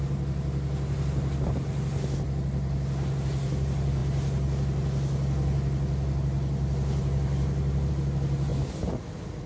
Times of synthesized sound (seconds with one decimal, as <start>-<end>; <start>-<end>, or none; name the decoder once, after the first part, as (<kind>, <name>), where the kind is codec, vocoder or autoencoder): none